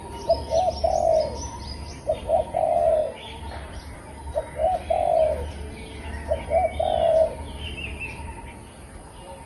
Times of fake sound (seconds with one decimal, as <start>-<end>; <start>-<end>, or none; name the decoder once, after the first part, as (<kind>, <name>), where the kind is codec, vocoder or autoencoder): none

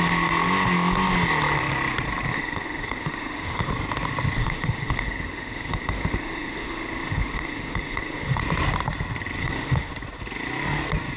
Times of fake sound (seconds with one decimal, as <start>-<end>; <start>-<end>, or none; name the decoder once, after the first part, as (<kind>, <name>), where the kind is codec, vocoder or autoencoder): 2.3-3.7 (autoencoder, DAC-VAE); 4.4-8.4; 9.4-9.9

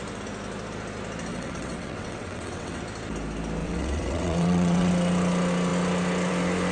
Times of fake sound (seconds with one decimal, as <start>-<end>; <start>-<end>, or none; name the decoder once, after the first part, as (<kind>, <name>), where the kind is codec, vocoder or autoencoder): 1.3-2.8 (vocoder, WaveNeXt); 3.6-4.9

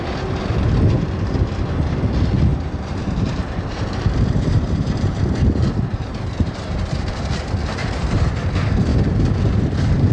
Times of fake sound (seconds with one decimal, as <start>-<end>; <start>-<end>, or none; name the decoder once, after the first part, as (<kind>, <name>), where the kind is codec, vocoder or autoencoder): 2.5-7.3 (vocoder, BigVGAN v2); 7.8-8.3; 8.9-10.1

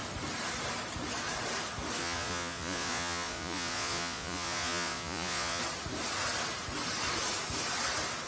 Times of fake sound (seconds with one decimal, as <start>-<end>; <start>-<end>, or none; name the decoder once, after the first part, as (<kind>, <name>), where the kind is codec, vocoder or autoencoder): 2.0-5.6 (vocoder, Vocos)

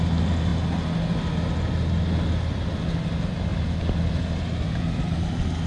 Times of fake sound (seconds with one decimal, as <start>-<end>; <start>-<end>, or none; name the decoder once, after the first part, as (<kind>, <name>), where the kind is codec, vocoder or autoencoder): none

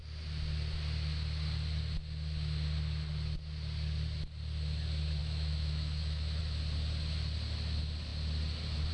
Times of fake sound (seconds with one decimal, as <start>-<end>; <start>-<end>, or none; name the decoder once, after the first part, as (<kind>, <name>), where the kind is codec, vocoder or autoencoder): 5.2-6.4 (autoencoder, DAC-VAE)

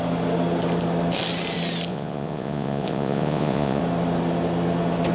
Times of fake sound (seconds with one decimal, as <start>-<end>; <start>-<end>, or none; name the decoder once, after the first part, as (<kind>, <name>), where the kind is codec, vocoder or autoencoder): 1.9-3.8 (vocoder, Vocos)